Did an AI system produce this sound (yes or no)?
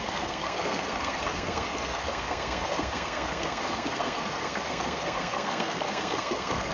yes